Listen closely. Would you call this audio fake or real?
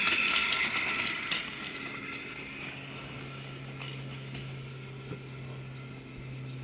real